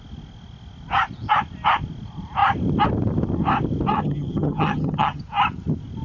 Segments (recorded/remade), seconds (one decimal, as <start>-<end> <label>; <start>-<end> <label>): 0.0-3.9 recorded; 3.9-5.2 remade; 5.2-6.0 recorded